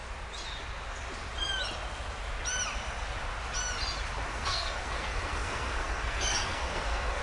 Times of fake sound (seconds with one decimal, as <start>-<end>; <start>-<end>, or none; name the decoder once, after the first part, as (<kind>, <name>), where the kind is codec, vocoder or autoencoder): 4.3-7.2 (codec, SNAC)

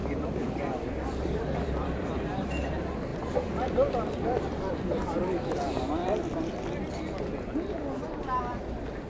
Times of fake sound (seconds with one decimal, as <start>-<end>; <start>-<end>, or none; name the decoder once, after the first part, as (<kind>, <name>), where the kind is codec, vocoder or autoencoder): 0.0-2.2 (vocoder, BigVGAN v2); 3.1-4.7

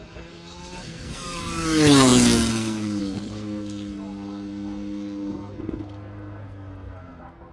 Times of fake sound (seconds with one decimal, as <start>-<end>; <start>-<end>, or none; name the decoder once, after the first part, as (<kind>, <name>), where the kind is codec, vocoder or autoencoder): 0.0-7.5 (codec, SNAC)

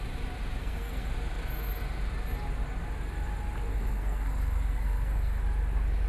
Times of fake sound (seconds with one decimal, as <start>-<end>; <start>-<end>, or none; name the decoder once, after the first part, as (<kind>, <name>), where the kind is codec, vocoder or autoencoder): 0.6-1.1 (codec, SNAC); 3.7-5.4

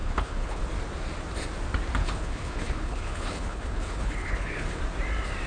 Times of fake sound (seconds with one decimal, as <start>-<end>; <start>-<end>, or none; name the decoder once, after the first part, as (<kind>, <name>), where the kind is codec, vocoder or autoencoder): 0.0-0.6 (codec, HILCodec); 2.0-4.8

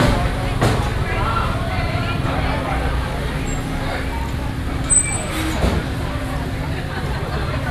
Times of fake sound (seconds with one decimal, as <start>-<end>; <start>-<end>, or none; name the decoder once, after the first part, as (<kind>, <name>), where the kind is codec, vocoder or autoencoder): none

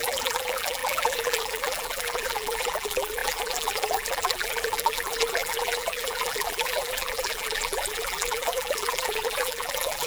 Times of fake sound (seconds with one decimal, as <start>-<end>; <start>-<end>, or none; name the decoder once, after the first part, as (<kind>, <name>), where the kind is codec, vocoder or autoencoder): 0.0-10.1 (vocoder, BigVGAN v2)

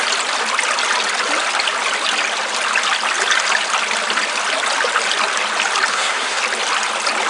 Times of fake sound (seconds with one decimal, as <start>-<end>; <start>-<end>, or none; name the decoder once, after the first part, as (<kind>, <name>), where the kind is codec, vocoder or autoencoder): 5.9-6.4 (codec, SNAC)